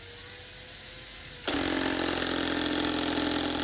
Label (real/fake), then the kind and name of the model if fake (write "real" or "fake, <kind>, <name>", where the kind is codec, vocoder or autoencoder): real